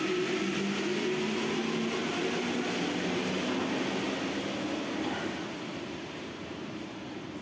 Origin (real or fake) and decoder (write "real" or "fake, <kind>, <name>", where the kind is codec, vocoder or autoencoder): real